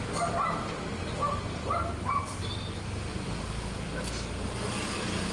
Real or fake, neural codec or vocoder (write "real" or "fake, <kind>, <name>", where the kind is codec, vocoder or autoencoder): real